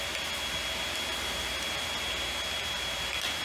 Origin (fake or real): real